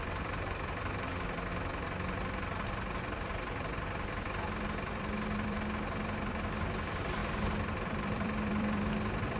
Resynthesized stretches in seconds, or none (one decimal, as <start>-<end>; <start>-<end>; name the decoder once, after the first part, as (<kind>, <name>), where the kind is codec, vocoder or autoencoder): 0.0-1.5 (vocoder, BigVGAN v2); 2.2-9.4